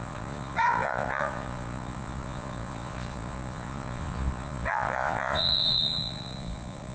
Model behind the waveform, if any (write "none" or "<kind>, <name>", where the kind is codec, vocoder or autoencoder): vocoder, Vocos